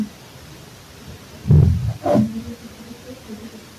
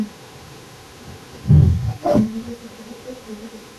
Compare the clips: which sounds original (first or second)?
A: first